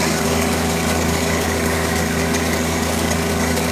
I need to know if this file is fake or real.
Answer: fake